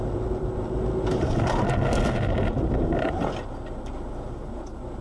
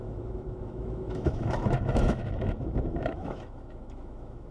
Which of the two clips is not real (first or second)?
second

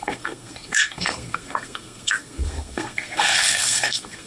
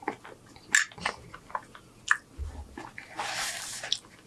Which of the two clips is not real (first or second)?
first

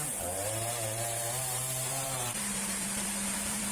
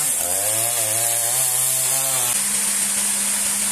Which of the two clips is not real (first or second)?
first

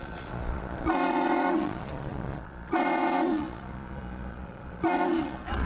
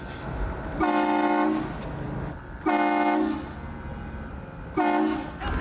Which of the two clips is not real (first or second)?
first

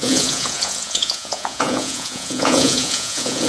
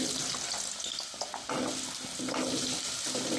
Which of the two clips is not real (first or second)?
first